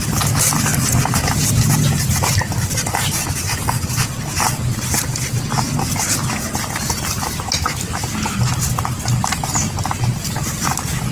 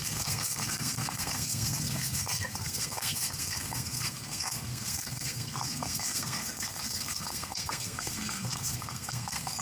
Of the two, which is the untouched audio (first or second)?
first